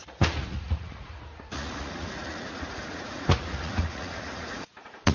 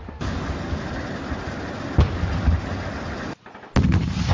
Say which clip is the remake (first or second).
first